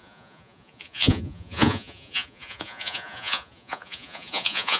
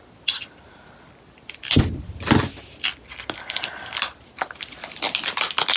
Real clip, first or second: second